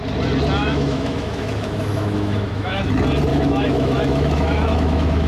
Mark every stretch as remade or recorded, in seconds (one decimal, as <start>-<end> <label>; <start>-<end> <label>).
0.0-0.6 recorded; 0.6-2.8 remade; 2.8-3.3 recorded; 3.3-5.3 remade